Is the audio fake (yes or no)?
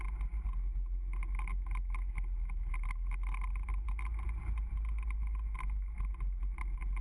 no